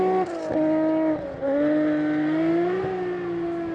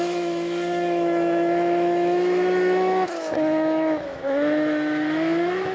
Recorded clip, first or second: first